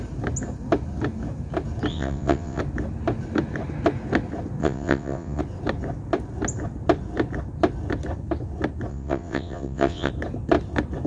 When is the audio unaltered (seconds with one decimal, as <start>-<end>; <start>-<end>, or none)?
0.0-1.9; 2.6-4.6; 5.4-8.9; 10.1-11.1